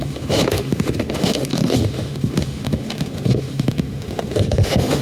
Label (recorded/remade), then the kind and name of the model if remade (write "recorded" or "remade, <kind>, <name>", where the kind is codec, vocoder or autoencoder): remade, autoencoder, DAC-VAE